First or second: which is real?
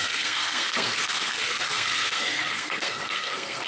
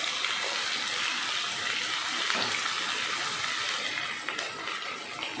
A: second